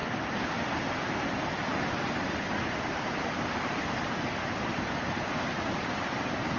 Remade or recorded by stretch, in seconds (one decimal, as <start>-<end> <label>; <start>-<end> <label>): 0.0-6.6 remade

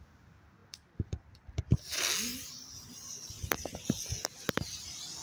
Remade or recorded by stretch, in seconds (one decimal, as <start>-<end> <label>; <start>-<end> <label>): 0.0-0.6 recorded; 0.6-1.8 remade; 1.8-2.3 recorded; 2.3-2.9 remade; 2.9-5.2 recorded